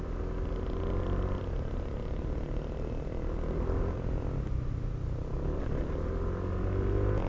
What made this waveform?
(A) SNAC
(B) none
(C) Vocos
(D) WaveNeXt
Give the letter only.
B